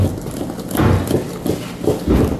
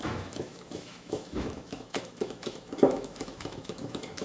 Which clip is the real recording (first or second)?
first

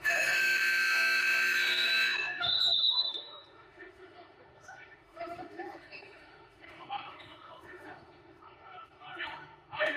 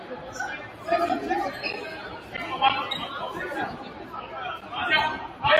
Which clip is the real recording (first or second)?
second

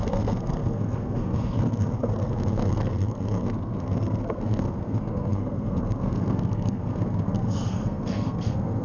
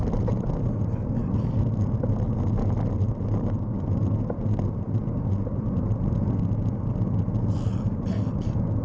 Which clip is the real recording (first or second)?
second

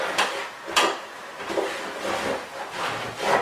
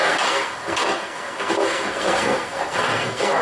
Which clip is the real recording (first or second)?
first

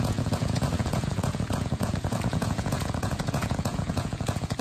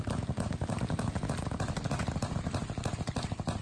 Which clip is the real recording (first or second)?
second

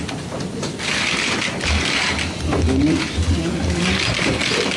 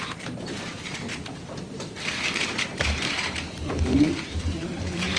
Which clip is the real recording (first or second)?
first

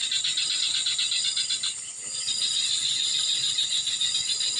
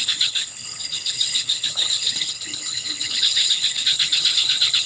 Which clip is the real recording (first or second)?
first